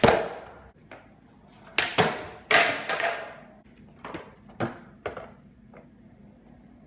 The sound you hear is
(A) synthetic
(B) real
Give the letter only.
B